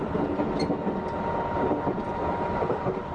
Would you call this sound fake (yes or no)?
no